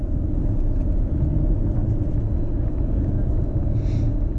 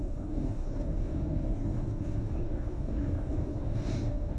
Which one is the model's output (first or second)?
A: second